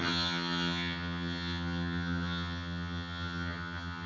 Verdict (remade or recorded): remade